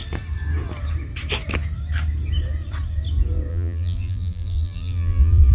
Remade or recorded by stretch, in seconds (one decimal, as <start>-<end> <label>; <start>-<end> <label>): 0.0-3.5 recorded; 3.5-5.5 remade